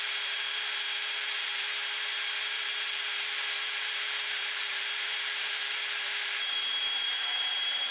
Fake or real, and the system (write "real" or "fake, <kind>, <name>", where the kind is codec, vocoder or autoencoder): fake, vocoder, BigVGAN v2